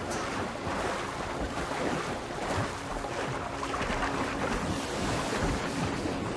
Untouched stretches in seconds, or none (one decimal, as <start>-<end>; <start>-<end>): 0.0-6.4